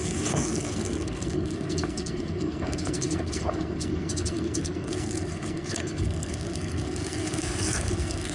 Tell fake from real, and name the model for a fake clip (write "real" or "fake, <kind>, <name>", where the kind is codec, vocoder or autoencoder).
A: fake, codec, SNAC